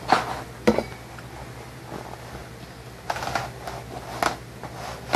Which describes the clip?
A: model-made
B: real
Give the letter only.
B